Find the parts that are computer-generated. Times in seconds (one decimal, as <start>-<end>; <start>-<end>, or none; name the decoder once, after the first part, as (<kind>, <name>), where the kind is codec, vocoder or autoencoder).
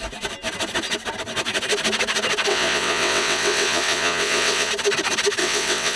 2.5-4.7 (vocoder, WaveNeXt); 5.4-6.0